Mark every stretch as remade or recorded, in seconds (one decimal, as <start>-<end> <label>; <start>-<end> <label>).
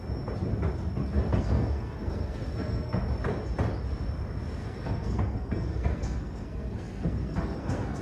0.0-1.3 recorded; 1.3-3.0 remade; 3.0-4.6 recorded; 4.6-8.0 remade